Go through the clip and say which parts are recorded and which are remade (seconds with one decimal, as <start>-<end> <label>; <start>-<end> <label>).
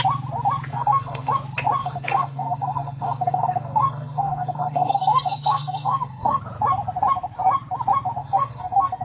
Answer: 0.0-0.7 recorded; 0.7-1.3 remade; 1.3-1.8 recorded; 1.8-6.4 remade; 6.4-8.2 recorded; 8.2-9.0 remade